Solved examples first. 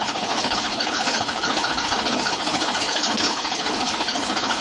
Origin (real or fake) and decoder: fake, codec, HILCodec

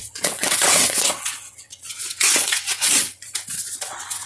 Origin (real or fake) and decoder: fake, vocoder, WaveNeXt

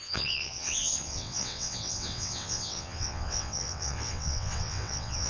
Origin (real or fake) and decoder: fake, vocoder, WaveNeXt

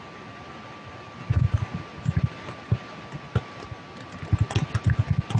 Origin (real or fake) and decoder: real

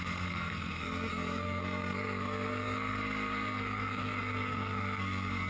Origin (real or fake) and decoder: fake, codec, SNAC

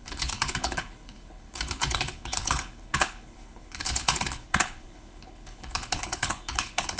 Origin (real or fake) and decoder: fake, codec, HILCodec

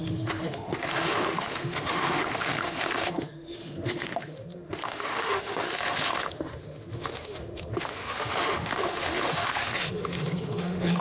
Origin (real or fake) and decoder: fake, autoencoder, DAC-VAE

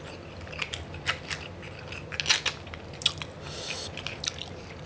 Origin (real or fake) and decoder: real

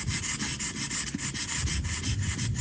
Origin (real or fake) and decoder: real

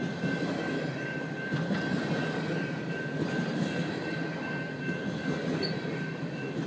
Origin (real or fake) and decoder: fake, vocoder, BigVGAN v2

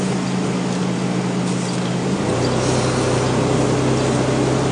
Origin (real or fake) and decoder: real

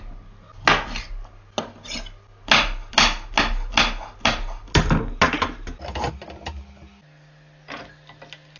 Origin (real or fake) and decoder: real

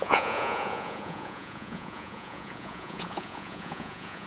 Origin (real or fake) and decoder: fake, vocoder, Vocos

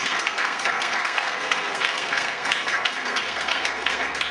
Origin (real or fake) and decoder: fake, codec, SNAC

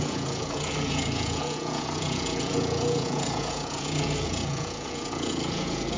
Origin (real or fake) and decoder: fake, vocoder, Vocos